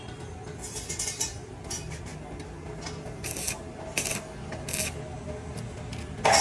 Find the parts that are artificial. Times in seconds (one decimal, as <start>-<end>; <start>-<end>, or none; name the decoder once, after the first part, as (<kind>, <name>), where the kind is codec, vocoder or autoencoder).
none